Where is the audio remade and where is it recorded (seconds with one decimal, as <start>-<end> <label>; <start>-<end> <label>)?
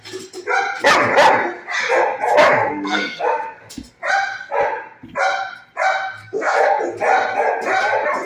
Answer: 0.0-2.7 recorded; 2.7-3.6 remade; 3.6-6.2 recorded; 6.2-6.8 remade; 6.8-8.3 recorded